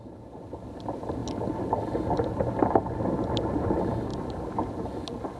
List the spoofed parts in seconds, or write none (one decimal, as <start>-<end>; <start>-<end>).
none